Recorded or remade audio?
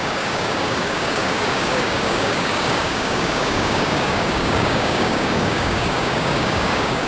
remade